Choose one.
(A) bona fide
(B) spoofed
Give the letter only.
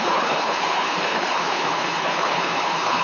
B